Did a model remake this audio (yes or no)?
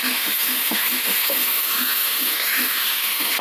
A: yes